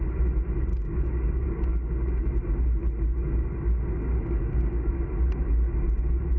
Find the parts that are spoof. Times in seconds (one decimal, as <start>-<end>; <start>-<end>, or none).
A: 0.7-2.3; 4.1-4.9